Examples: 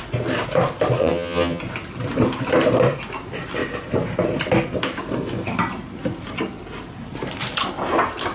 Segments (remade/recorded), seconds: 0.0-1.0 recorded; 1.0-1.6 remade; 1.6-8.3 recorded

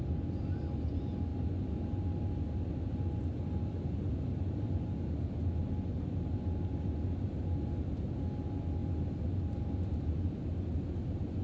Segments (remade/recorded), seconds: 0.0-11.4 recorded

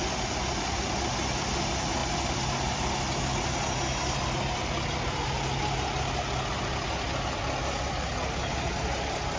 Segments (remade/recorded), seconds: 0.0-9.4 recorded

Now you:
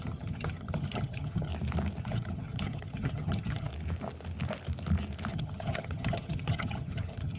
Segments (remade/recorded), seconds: 0.0-1.5 remade; 1.5-2.0 recorded; 2.0-3.7 remade; 3.7-5.3 recorded; 5.3-7.4 remade

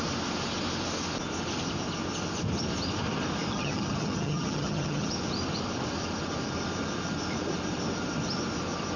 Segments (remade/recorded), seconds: 0.0-3.5 recorded; 3.5-5.1 remade; 5.1-9.0 recorded

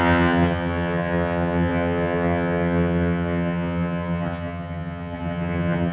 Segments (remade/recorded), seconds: 0.0-5.9 remade